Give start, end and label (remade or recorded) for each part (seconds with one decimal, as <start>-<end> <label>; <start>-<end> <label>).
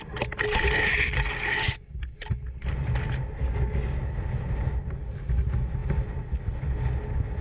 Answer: 0.0-3.4 recorded; 3.4-4.0 remade; 4.0-7.4 recorded